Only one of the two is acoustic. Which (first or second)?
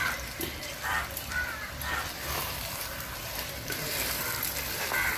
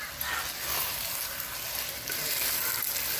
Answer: second